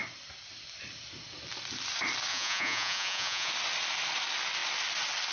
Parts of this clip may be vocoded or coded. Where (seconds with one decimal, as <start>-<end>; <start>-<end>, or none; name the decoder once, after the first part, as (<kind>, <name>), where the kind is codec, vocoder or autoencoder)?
2.3-3.5 (vocoder, Vocos)

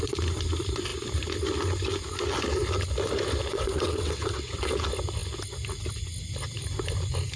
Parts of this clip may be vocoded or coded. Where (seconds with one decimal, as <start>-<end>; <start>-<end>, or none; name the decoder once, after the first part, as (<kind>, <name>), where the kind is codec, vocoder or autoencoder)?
3.5-4.7 (vocoder, WaveNeXt)